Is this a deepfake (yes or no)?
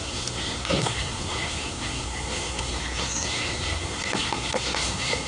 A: yes